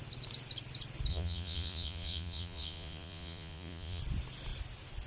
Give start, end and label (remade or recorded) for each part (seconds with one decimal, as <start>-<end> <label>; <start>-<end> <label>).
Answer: 0.0-1.1 recorded; 1.1-4.0 remade; 4.0-5.1 recorded